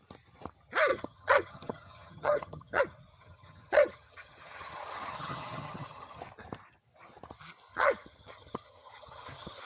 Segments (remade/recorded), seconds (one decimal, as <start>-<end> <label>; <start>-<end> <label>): 0.0-0.9 recorded; 0.9-2.8 remade; 2.8-3.2 recorded; 3.2-6.2 remade; 6.2-7.7 recorded; 7.7-9.6 remade